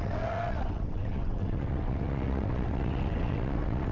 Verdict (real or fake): fake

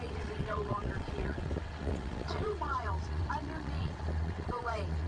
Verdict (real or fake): fake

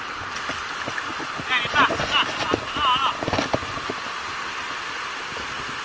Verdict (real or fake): real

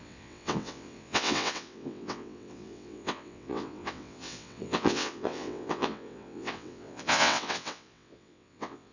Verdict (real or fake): fake